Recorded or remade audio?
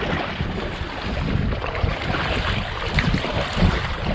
recorded